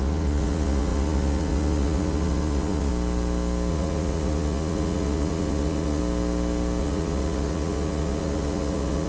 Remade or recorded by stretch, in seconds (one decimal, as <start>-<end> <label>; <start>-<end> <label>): 0.0-2.9 remade; 2.9-3.7 recorded; 3.7-6.0 remade; 6.0-6.8 recorded; 6.8-9.1 remade